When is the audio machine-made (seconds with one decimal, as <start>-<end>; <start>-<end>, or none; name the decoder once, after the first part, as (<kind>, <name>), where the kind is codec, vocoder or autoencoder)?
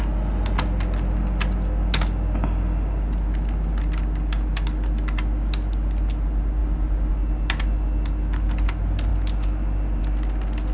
none